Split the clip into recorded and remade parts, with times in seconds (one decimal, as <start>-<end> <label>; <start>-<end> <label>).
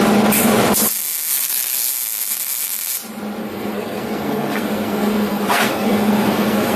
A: 0.0-1.3 recorded; 1.3-1.9 remade; 1.9-3.4 recorded; 3.4-6.8 remade